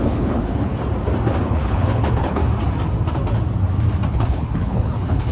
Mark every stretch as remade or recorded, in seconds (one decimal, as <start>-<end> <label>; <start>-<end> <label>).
0.0-0.7 remade; 0.7-1.4 recorded; 1.4-2.4 remade; 2.4-4.1 recorded; 4.1-5.3 remade

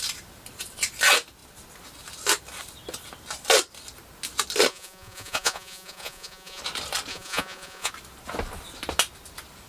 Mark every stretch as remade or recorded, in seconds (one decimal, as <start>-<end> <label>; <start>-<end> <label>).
0.0-4.7 recorded; 4.7-6.6 remade; 6.6-7.1 recorded; 7.1-7.9 remade; 7.9-9.7 recorded

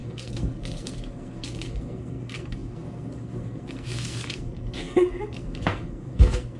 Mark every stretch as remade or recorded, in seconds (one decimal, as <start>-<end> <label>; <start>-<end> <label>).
0.0-6.6 remade

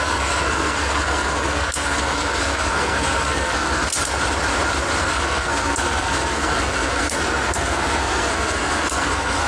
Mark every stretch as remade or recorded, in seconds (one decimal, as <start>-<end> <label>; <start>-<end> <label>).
0.0-3.9 remade; 3.9-5.0 recorded; 5.0-9.5 remade

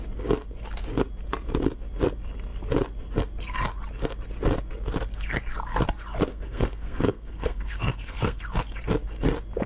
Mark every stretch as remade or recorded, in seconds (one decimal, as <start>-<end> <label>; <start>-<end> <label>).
0.0-6.3 recorded; 6.3-8.4 remade; 8.4-9.7 recorded